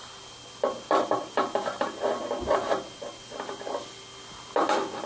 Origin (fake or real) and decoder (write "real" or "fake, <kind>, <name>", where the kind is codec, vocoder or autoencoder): real